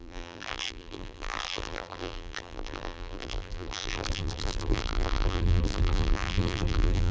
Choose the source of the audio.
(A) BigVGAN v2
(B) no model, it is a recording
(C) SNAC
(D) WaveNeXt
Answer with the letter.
A